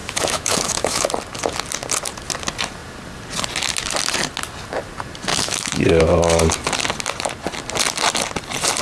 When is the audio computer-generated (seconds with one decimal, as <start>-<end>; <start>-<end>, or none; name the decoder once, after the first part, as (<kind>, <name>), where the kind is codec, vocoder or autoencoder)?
0.0-1.1 (autoencoder, DAC-VAE); 5.3-6.0